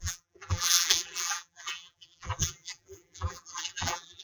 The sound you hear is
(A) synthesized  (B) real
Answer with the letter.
A